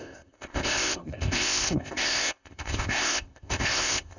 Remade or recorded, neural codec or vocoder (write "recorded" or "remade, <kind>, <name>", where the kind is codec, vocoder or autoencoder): remade, codec, ZipCodec